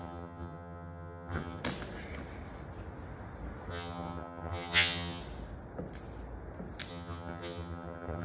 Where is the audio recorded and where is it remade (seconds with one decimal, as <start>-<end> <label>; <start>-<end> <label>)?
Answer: 0.0-1.6 remade; 1.6-3.7 recorded; 3.7-5.2 remade; 5.2-6.9 recorded; 6.9-8.2 remade